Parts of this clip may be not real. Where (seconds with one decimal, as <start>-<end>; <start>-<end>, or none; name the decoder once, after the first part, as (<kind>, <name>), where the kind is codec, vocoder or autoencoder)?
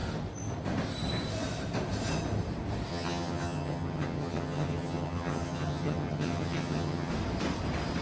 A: 2.9-7.1 (vocoder, HiFi-GAN)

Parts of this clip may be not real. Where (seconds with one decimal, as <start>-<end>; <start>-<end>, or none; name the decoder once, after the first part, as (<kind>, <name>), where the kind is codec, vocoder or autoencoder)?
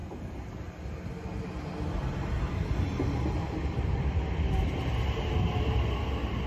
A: none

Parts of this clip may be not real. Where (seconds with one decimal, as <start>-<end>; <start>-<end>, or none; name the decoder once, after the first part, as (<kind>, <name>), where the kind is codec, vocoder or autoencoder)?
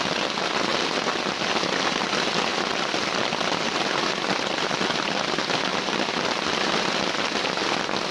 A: none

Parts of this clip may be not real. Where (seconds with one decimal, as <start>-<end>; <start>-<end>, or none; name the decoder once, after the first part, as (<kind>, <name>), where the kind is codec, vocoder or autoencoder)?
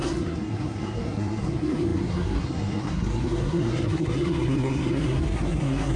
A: 0.0-6.0 (codec, SNAC)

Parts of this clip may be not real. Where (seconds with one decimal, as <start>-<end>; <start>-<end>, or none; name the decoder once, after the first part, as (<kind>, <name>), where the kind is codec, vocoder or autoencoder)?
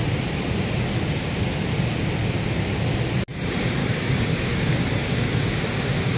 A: 3.8-5.5 (codec, DAC)